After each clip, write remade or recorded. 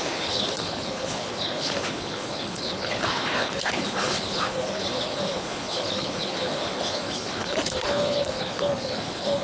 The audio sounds remade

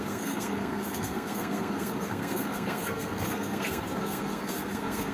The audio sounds remade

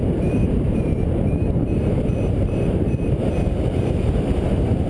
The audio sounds remade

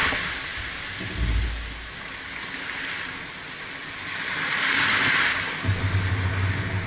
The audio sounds recorded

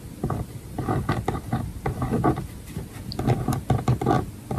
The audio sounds recorded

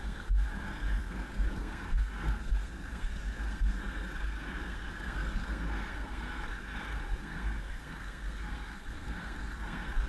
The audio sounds remade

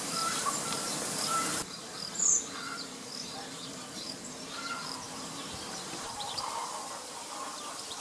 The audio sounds remade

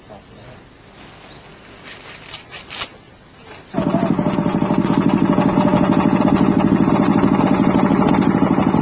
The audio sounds recorded